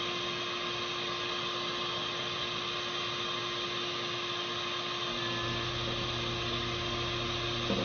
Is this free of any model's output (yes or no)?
yes